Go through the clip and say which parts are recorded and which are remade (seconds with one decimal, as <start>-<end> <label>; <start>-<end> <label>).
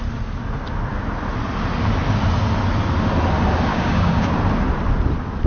0.0-3.7 recorded; 3.7-4.3 remade; 4.3-5.5 recorded